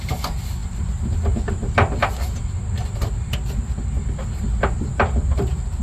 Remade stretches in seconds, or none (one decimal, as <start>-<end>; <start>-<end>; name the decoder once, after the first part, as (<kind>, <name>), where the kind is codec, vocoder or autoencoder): none